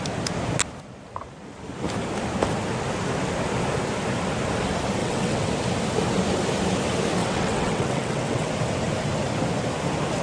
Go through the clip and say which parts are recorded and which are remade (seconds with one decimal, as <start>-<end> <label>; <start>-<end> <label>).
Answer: 0.0-5.0 recorded; 5.0-5.5 remade; 5.5-7.2 recorded; 7.2-8.5 remade; 8.5-10.2 recorded